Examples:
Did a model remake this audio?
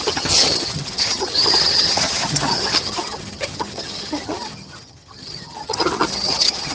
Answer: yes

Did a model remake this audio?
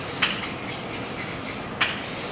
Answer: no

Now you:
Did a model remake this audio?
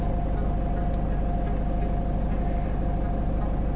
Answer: no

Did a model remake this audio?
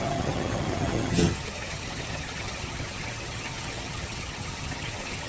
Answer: yes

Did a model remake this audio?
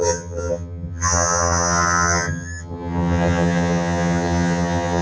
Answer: yes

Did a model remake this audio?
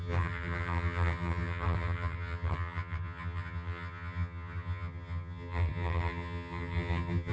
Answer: yes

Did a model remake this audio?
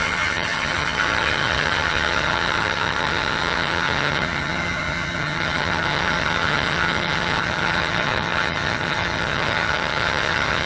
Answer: yes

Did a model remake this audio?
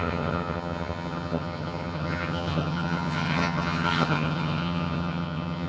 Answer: yes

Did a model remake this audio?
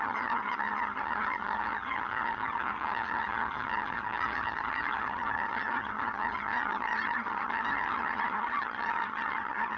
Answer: yes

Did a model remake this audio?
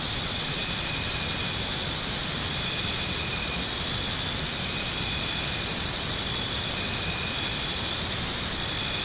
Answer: no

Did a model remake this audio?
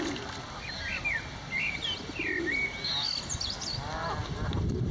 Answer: no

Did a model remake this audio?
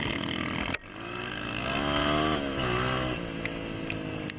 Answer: no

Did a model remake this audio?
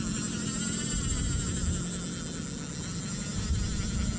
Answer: no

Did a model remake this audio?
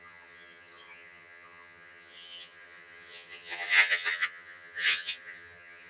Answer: yes